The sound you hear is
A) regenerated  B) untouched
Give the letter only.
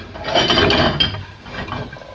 B